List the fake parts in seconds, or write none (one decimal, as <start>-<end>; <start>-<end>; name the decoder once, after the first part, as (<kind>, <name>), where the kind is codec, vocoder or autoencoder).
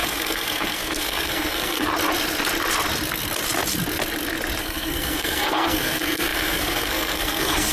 0.0-1.9 (codec, SNAC); 4.6-7.7